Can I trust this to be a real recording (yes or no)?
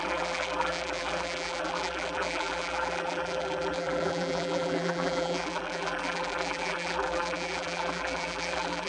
no